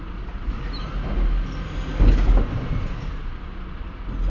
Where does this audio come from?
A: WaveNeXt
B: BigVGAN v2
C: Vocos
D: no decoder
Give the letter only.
D